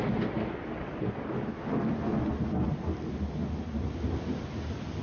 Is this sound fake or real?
real